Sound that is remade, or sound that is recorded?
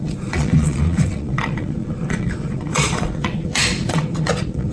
remade